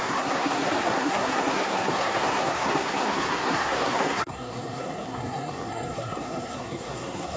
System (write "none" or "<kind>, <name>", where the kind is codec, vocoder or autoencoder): codec, SNAC